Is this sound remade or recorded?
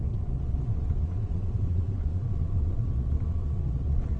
remade